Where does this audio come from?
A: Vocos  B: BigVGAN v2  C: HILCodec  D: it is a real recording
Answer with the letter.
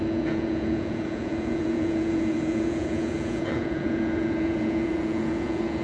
A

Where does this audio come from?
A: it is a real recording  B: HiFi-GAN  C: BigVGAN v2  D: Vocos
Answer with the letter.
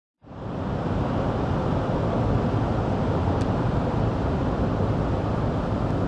A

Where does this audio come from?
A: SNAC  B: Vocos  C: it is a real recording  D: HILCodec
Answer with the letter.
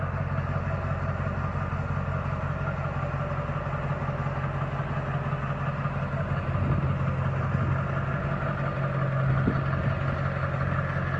C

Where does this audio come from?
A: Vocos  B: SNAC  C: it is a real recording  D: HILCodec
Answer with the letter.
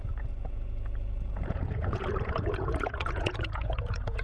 A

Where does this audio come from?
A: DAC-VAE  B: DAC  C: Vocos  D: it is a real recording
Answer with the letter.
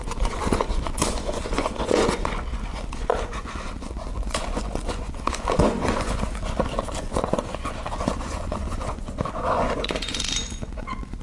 C